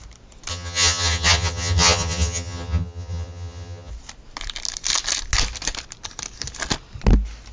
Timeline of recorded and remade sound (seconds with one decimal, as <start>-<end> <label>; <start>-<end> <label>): 0.0-0.5 recorded; 0.5-3.9 remade; 3.9-7.5 recorded